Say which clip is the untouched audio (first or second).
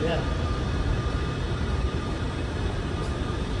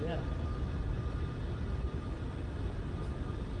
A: second